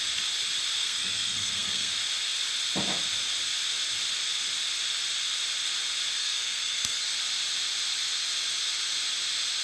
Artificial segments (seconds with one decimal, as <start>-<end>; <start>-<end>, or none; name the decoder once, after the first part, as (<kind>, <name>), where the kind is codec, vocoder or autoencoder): 0.8-1.9 (codec, SNAC); 6.2-7.0